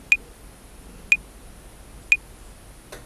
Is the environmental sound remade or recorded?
recorded